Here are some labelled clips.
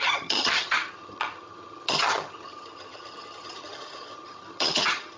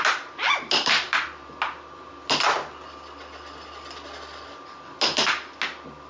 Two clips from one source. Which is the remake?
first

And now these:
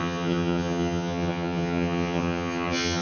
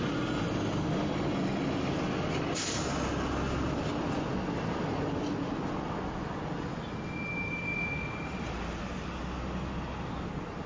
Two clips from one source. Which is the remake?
first